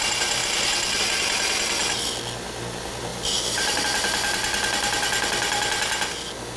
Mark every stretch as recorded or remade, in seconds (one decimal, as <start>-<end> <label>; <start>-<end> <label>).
0.0-3.1 recorded; 3.1-3.8 remade; 3.8-6.6 recorded